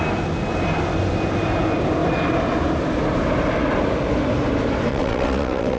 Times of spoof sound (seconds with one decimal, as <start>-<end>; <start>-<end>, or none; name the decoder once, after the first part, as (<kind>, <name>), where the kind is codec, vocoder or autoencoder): 4.9-5.8 (vocoder, WaveNeXt)